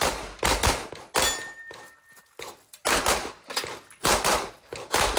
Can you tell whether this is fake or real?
real